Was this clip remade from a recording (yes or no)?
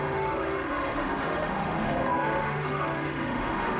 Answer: yes